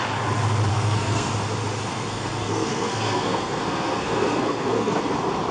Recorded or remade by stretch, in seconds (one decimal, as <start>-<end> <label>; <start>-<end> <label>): 0.0-0.7 recorded; 0.7-1.3 remade; 1.3-1.9 recorded; 1.9-5.0 remade; 5.0-5.5 recorded